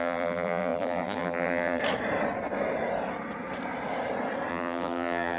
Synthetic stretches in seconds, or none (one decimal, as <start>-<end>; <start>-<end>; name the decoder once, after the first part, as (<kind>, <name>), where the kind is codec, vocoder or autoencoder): 0.0-1.8 (vocoder, BigVGAN v2); 4.5-5.4